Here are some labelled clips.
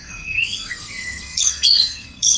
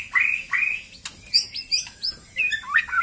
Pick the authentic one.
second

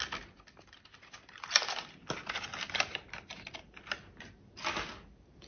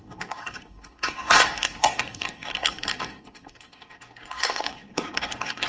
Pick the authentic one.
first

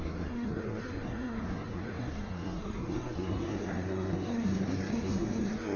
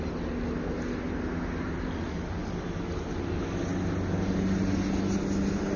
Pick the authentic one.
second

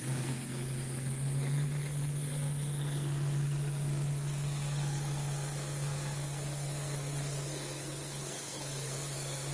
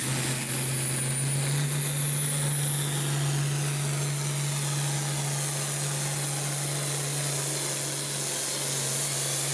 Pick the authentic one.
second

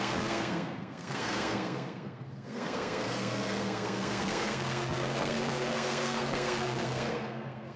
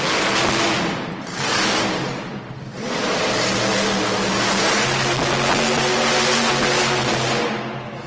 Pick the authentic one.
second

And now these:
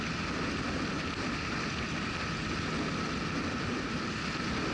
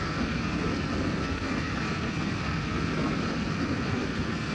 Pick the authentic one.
first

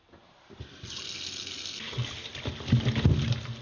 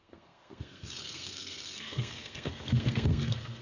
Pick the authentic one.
first